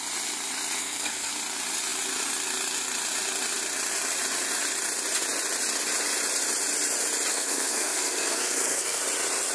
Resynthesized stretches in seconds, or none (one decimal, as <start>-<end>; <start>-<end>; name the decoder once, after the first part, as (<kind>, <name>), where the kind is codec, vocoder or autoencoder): 0.8-1.3 (codec, SNAC); 7.3-9.0